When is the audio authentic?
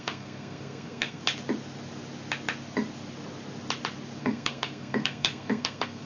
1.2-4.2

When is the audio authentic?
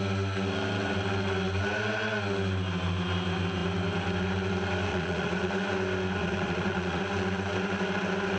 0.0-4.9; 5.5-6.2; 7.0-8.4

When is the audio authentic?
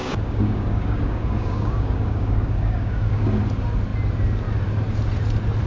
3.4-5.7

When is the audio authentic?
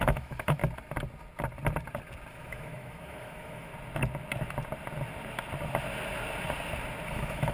0.6-2.3; 3.7-7.1